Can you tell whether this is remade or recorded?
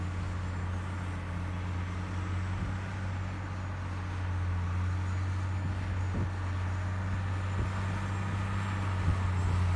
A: recorded